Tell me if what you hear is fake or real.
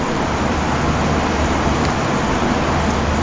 real